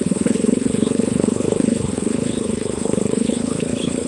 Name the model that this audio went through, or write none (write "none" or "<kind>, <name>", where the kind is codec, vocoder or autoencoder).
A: codec, HILCodec